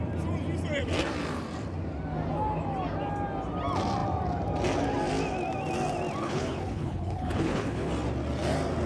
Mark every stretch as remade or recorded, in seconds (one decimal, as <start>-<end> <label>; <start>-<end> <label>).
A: 0.0-6.2 recorded; 6.2-7.9 remade; 7.9-8.9 recorded